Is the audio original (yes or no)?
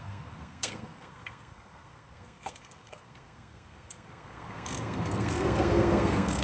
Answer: no